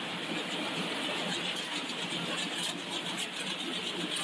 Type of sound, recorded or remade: recorded